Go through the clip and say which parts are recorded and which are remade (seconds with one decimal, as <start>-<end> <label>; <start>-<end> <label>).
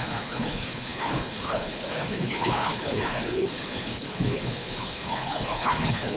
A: 0.0-6.2 remade